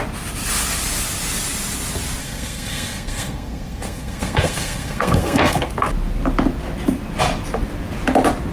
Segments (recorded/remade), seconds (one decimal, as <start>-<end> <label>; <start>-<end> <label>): 0.0-2.2 recorded; 2.2-5.7 remade; 5.7-8.5 recorded